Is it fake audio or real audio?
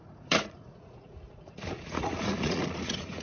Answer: fake